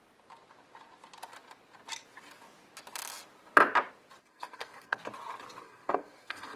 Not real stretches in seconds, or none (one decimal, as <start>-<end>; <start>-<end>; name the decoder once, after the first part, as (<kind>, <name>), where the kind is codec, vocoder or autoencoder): 4.2-5.0 (codec, SNAC); 5.6-6.6